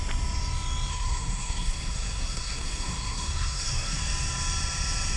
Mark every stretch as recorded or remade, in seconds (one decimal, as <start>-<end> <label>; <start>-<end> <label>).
0.0-0.9 recorded; 0.9-4.0 remade; 4.0-5.2 recorded